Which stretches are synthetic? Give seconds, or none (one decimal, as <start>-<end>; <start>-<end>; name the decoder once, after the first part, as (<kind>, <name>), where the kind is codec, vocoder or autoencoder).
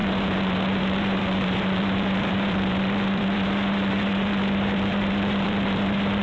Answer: 0.0-6.2 (vocoder, BigVGAN v2)